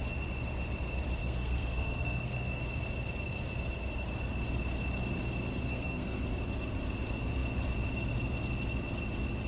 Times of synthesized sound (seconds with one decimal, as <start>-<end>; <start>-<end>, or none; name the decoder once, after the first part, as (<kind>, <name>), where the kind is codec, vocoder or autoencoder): 1.2-2.6 (codec, SNAC); 5.7-6.2